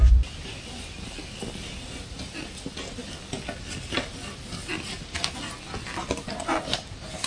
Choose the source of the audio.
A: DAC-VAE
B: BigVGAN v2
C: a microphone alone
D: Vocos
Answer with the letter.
C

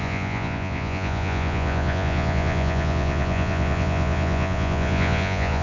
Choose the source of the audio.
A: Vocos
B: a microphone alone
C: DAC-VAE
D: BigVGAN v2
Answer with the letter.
A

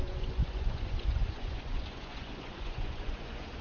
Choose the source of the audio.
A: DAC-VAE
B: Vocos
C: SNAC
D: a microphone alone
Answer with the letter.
B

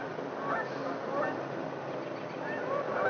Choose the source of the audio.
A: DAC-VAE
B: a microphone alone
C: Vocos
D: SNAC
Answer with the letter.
B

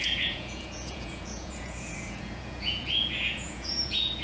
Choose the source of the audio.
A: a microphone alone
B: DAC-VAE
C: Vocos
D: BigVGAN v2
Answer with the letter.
C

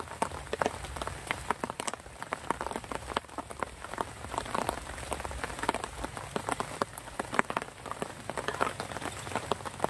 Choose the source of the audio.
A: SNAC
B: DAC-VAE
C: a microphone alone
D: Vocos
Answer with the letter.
C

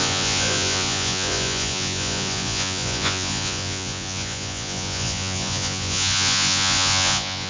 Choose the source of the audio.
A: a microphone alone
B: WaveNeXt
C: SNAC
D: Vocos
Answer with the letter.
D